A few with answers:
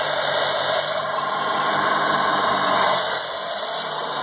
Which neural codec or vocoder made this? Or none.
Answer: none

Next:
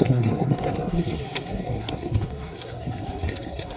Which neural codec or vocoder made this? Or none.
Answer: codec, SNAC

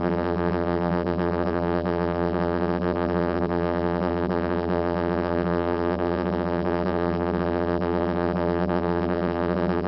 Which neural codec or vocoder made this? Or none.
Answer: vocoder, BigVGAN v2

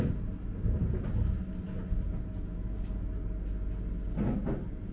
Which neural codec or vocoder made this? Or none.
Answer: none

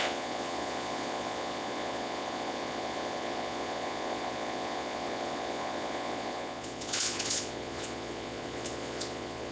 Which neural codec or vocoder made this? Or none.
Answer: vocoder, Vocos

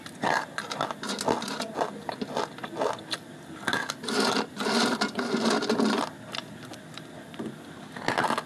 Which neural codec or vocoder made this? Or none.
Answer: none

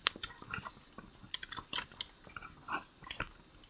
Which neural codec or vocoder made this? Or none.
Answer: none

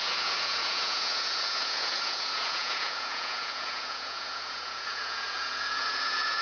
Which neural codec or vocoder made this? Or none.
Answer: vocoder, Vocos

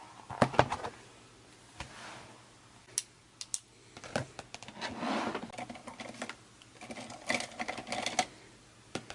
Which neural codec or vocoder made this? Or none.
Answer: none